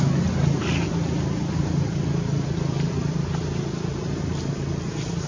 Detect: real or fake real